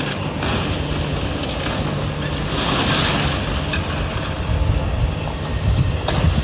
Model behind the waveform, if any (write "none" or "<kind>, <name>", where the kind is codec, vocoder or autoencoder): none